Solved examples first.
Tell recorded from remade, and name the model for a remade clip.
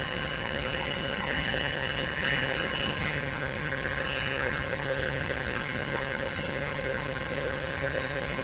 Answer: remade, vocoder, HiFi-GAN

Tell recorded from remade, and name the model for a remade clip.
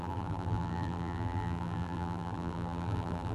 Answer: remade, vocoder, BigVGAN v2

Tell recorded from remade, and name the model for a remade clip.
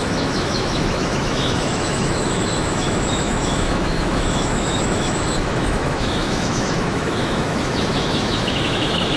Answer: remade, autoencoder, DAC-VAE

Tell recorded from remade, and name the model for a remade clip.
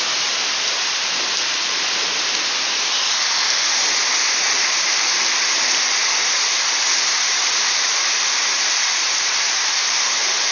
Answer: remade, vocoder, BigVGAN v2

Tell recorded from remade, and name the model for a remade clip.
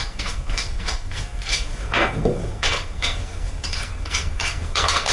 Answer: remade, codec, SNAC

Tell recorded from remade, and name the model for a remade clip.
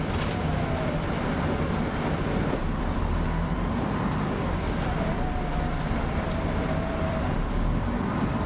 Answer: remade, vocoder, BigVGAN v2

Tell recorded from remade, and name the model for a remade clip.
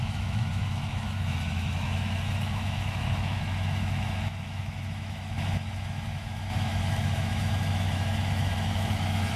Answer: remade, autoencoder, DAC-VAE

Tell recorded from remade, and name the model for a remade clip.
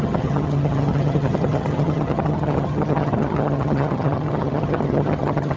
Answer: remade, vocoder, HiFi-GAN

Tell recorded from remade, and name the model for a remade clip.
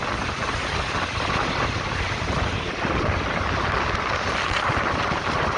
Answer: recorded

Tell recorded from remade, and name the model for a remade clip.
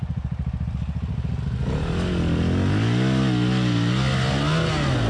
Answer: recorded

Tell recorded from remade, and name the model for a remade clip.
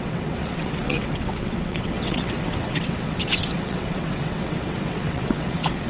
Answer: remade, vocoder, WaveNeXt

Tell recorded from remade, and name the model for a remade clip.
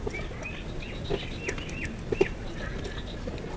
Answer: recorded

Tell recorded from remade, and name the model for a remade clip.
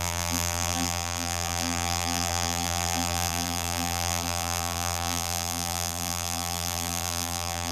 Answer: remade, vocoder, BigVGAN v2